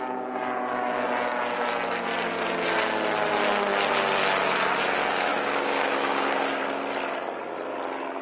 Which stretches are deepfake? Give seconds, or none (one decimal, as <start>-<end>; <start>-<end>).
5.3-6.6